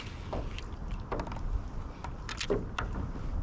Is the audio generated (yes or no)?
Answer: no